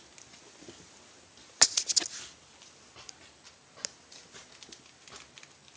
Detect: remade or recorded recorded